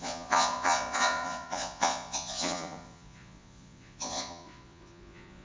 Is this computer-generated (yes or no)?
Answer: yes